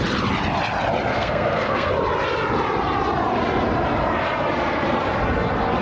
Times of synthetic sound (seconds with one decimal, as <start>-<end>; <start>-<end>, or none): 1.1-1.9